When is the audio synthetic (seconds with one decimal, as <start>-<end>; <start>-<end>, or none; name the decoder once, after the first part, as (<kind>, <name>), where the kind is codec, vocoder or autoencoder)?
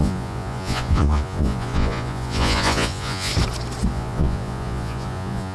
0.0-3.3 (vocoder, Vocos); 3.9-5.5